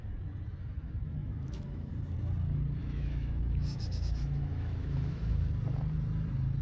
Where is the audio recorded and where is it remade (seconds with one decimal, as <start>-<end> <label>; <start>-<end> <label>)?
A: 0.0-1.2 recorded; 1.2-1.9 remade; 1.9-2.8 recorded; 2.8-5.5 remade; 5.5-6.6 recorded